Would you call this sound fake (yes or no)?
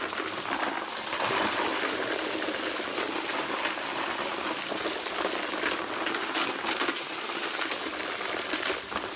no